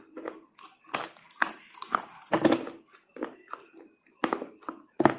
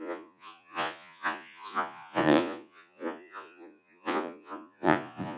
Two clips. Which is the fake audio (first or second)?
second